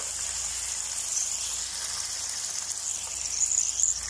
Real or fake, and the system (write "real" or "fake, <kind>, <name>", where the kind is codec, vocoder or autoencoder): real